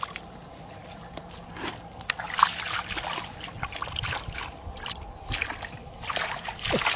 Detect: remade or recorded recorded